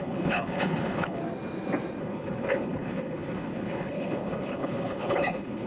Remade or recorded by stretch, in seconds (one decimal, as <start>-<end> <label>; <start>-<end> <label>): 0.0-1.2 remade; 1.2-2.0 recorded; 2.0-5.7 remade